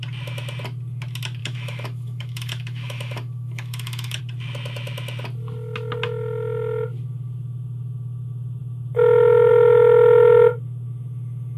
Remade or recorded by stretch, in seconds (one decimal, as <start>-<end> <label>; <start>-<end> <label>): 0.0-1.4 recorded; 1.4-4.2 remade; 4.2-11.6 recorded